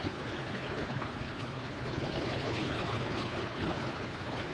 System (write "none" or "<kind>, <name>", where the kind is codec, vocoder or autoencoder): codec, HILCodec